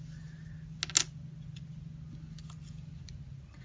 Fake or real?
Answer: real